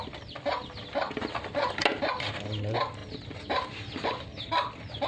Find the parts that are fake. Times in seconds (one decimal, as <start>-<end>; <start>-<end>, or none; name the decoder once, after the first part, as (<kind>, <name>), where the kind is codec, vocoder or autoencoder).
3.0-4.1 (vocoder, BigVGAN v2)